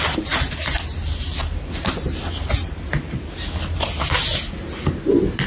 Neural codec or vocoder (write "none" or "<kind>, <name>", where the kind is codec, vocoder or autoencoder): none